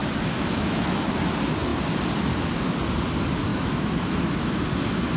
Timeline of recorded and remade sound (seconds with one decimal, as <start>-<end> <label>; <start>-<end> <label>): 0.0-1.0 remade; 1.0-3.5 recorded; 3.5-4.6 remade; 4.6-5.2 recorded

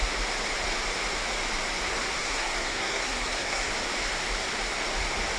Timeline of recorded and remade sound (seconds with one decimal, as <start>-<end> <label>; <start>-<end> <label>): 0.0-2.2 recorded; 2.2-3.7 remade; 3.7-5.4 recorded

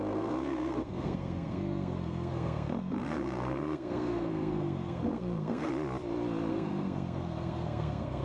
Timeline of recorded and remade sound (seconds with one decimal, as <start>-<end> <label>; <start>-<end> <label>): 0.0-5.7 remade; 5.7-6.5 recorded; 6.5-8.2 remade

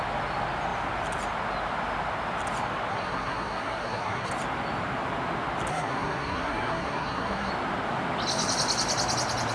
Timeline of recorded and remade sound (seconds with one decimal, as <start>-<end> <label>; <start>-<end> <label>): 0.0-2.9 recorded; 2.9-4.3 remade; 4.3-5.7 recorded; 5.7-7.5 remade; 7.5-9.5 recorded

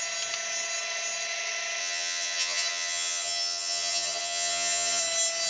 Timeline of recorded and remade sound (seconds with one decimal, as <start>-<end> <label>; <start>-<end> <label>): 0.0-1.8 recorded; 1.8-5.0 remade; 5.0-5.5 recorded

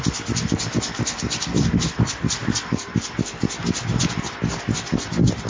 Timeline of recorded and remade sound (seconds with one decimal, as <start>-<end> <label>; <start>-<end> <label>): 0.0-5.5 recorded